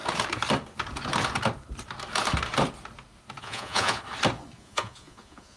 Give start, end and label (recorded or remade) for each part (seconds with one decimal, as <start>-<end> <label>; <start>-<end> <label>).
0.0-3.4 recorded; 3.4-4.0 remade; 4.0-4.6 recorded; 4.6-5.6 remade